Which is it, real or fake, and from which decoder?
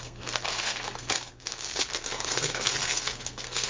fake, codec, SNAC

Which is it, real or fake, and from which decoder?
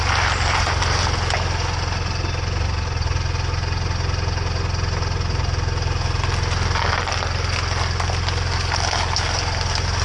real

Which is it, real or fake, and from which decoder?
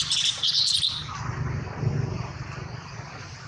real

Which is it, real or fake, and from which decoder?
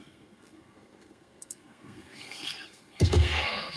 fake, codec, SNAC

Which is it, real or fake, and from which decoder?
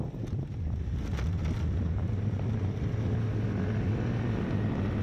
real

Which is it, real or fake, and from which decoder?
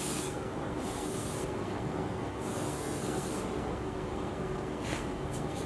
fake, codec, SNAC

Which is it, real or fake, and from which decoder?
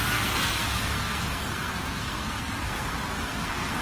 fake, codec, SNAC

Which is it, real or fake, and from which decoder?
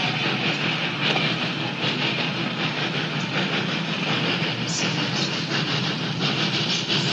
real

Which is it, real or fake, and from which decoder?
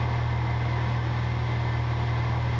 real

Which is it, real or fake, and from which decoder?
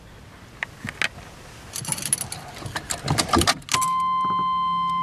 real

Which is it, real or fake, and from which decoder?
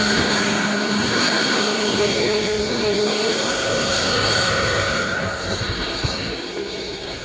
fake, codec, SNAC